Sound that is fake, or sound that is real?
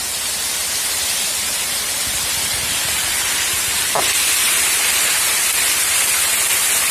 real